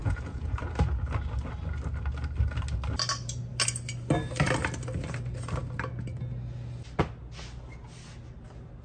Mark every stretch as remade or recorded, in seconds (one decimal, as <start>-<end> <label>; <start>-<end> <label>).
0.0-0.6 remade; 0.6-8.8 recorded